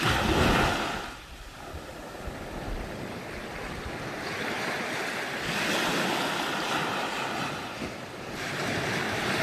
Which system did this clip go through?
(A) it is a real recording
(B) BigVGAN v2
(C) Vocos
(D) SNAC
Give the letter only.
A